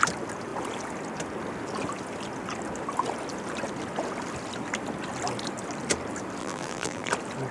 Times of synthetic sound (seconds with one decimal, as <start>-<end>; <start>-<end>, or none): 6.4-7.1